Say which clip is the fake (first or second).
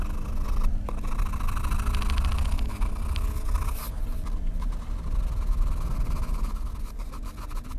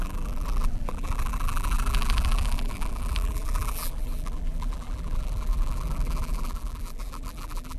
second